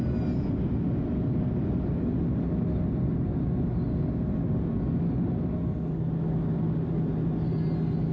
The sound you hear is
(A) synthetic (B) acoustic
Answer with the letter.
B